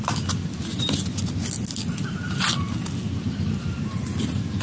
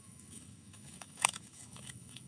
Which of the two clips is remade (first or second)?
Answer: second